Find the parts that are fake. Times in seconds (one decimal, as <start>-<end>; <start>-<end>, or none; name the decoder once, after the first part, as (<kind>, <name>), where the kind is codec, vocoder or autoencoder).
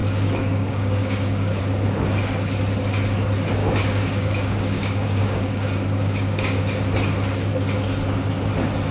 0.0-1.6 (codec, DAC); 3.6-6.6